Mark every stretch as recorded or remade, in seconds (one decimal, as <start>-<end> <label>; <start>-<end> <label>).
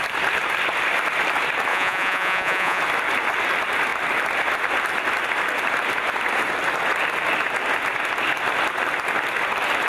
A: 0.0-1.7 recorded; 1.7-2.8 remade; 2.8-9.9 recorded